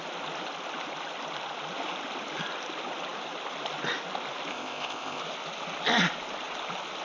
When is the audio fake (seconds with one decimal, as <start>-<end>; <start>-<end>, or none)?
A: 4.5-5.2

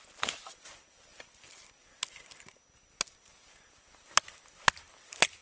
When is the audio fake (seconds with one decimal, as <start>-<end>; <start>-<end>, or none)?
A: none